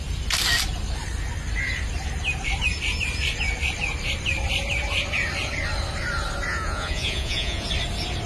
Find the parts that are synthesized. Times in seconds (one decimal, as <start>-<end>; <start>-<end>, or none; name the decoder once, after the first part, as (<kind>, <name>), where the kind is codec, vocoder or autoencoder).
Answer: 6.5-7.7 (vocoder, Vocos)